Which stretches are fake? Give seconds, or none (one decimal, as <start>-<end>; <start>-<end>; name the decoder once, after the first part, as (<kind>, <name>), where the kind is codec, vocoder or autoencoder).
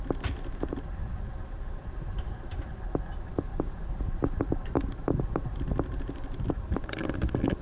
none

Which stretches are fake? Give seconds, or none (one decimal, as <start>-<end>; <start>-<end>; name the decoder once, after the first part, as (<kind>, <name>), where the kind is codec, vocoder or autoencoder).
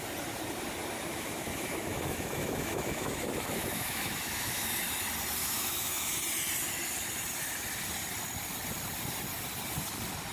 1.1-4.7 (autoencoder, DAC-VAE); 5.4-6.2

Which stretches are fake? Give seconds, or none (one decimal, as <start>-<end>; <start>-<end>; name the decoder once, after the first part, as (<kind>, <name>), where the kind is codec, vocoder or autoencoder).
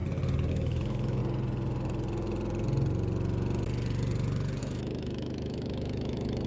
0.5-1.2 (autoencoder, DAC-VAE); 4.6-6.5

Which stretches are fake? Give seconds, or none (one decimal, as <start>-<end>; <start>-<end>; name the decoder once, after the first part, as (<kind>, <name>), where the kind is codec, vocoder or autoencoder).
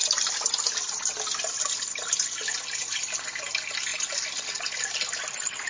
none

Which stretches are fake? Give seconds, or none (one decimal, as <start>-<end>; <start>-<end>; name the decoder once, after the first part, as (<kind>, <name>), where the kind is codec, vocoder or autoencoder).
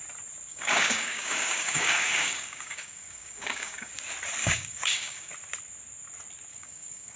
0.5-3.9 (codec, DAC); 4.4-5.3; 6.5-7.2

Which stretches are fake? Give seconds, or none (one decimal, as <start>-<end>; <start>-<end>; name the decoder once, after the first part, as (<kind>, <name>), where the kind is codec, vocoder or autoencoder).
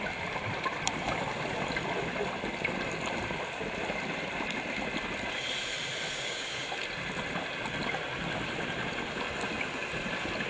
6.1-6.7 (codec, DAC)